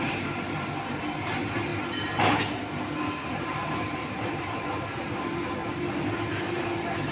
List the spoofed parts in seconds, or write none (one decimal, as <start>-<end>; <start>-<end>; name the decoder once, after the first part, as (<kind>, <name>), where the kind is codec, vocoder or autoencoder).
0.0-1.7 (vocoder, BigVGAN v2); 3.3-7.1

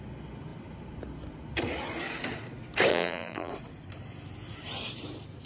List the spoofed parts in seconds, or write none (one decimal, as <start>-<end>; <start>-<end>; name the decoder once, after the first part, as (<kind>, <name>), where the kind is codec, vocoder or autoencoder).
2.9-3.5 (vocoder, BigVGAN v2)

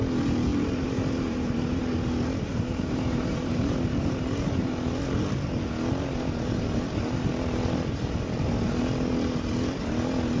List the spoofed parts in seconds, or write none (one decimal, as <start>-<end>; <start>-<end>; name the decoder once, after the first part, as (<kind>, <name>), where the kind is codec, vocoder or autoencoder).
0.5-1.8 (vocoder, BigVGAN v2); 2.5-4.7